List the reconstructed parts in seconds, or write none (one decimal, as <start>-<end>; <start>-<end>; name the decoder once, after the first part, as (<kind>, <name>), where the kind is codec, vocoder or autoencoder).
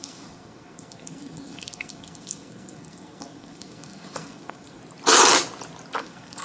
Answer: 0.0-4.8 (codec, SNAC); 6.0-6.4